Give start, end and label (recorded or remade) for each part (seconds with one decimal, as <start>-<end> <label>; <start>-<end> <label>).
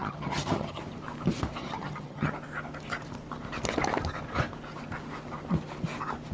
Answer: 0.0-0.8 remade; 0.8-1.6 recorded; 1.6-2.3 remade; 2.3-6.3 recorded